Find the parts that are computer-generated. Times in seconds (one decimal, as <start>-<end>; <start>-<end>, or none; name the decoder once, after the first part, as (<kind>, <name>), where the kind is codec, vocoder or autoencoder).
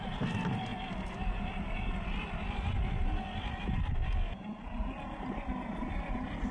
none